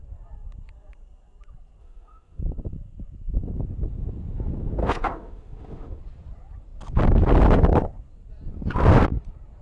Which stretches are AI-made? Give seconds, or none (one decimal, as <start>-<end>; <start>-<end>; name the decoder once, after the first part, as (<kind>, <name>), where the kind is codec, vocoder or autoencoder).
1.8-2.4 (autoencoder, DAC-VAE); 4.8-6.0